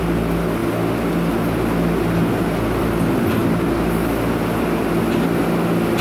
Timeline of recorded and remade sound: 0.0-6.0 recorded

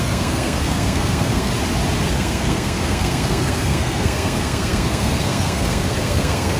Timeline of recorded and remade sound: 0.0-1.5 remade; 1.5-2.0 recorded; 2.0-6.6 remade

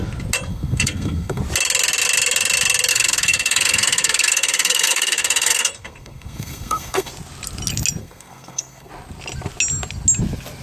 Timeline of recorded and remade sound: 0.0-0.5 recorded; 0.5-1.4 remade; 1.4-2.9 recorded; 2.9-7.1 remade; 7.1-8.0 recorded; 8.0-8.9 remade; 8.9-10.6 recorded

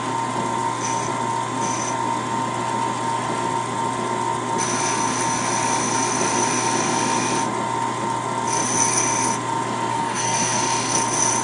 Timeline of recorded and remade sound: 0.0-9.9 recorded; 9.9-10.6 remade; 10.6-11.4 recorded

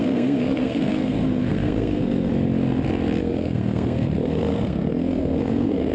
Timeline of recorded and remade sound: 0.0-2.3 remade; 2.3-3.2 recorded; 3.2-5.9 remade

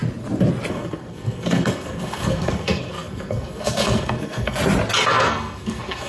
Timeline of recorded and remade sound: 0.0-0.7 recorded; 0.7-4.6 remade; 4.6-5.1 recorded; 5.1-6.1 remade